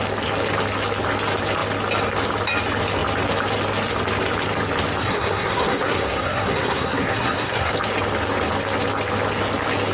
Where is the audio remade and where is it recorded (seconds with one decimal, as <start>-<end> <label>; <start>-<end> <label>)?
0.0-5.0 recorded; 5.0-7.7 remade; 7.7-9.9 recorded